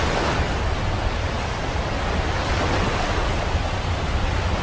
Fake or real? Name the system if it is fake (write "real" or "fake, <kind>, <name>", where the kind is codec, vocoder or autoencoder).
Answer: real